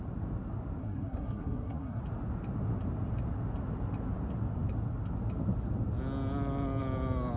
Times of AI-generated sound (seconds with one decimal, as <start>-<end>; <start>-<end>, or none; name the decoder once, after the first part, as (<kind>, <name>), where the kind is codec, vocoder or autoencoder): 0.8-2.0 (codec, SNAC)